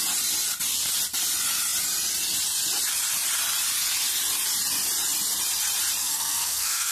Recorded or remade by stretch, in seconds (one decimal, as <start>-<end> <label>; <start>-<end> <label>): 0.0-6.0 recorded; 6.0-6.9 remade